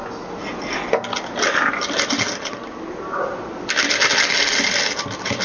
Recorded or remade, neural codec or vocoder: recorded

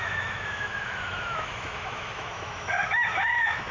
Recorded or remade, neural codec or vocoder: remade, autoencoder, DAC-VAE